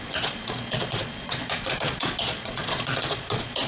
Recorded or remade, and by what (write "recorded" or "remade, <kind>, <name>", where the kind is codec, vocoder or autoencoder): remade, vocoder, Vocos